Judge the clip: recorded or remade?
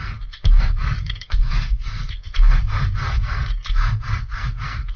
remade